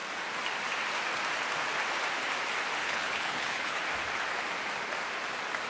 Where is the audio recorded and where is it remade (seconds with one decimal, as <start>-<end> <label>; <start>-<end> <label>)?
0.0-2.8 recorded; 2.8-3.8 remade; 3.8-5.7 recorded